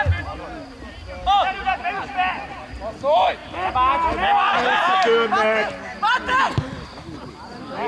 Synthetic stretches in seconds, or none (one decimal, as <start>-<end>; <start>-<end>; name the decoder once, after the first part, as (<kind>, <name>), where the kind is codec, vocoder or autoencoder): none